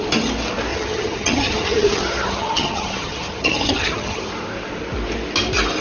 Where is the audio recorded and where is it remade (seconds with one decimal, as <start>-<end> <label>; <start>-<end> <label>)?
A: 0.0-0.7 recorded; 0.7-4.2 remade; 4.2-5.8 recorded

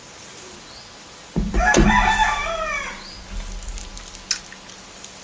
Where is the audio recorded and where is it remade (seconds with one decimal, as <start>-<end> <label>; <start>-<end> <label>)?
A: 0.0-5.2 recorded

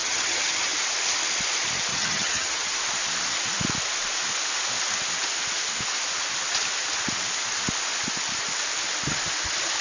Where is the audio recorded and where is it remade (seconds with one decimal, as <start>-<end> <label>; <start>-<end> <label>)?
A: 0.0-0.7 remade; 0.7-1.9 recorded; 1.9-2.7 remade; 2.7-9.8 recorded

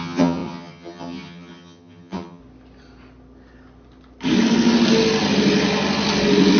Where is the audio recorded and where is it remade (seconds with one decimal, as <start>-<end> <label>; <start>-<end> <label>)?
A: 0.0-2.4 remade; 2.4-6.6 recorded

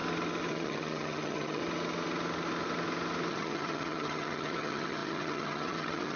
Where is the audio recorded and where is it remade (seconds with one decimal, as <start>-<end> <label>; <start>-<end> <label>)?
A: 0.0-0.5 recorded; 0.5-1.6 remade; 1.6-3.3 recorded; 3.3-6.2 remade

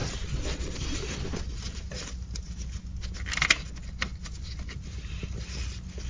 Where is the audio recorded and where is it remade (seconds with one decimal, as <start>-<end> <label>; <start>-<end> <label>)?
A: 0.0-6.1 recorded